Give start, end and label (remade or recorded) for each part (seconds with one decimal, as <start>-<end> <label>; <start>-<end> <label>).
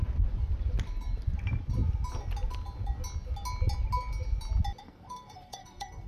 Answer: 0.0-4.8 recorded; 4.8-6.1 remade